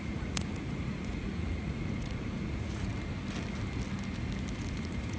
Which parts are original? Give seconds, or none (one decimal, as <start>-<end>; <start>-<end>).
2.9-4.6